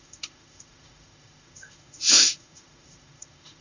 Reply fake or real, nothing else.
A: fake